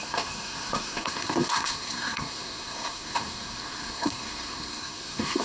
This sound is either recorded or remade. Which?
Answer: remade